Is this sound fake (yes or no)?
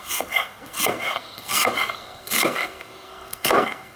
yes